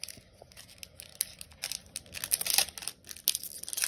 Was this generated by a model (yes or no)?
no